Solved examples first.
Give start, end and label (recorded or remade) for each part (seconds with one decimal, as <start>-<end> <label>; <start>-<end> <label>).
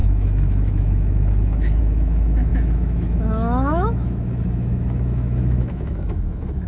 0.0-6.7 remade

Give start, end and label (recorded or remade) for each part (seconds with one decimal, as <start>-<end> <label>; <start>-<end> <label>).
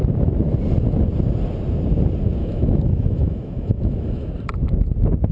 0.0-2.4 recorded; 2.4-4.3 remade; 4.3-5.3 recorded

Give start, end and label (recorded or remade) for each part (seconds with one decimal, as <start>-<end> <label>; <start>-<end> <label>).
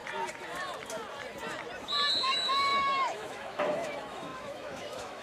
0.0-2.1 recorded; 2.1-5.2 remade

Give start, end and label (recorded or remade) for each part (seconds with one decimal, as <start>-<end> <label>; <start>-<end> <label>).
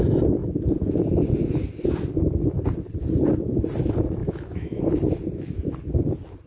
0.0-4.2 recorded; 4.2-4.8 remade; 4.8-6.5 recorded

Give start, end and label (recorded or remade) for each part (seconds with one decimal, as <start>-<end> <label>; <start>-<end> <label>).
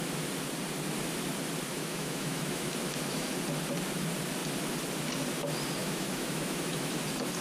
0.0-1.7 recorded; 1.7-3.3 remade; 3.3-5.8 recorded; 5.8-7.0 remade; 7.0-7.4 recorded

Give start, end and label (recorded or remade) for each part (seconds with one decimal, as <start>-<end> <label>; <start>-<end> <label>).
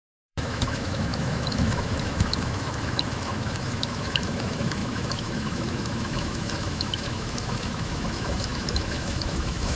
0.0-9.8 remade